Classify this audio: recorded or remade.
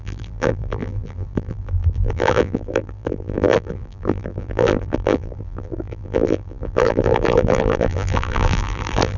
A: remade